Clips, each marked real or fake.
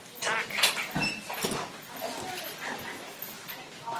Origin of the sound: real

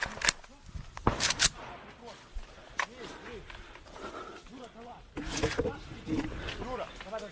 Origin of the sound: real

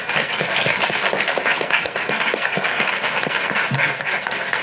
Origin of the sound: fake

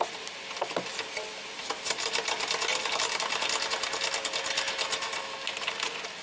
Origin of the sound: real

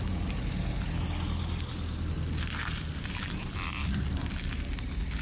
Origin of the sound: real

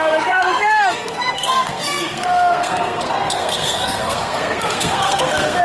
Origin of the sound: fake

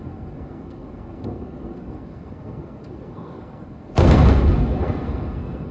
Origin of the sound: fake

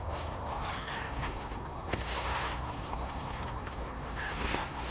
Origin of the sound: fake